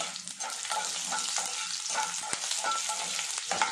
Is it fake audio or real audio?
real